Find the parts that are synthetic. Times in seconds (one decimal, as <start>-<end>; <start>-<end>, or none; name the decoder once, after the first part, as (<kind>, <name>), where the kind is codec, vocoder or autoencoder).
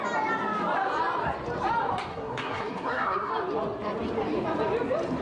2.1-3.3 (codec, SNAC)